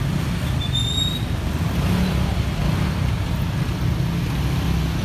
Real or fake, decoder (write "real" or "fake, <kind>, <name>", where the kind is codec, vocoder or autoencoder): real